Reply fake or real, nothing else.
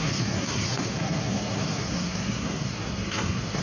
fake